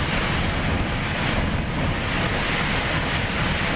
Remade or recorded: recorded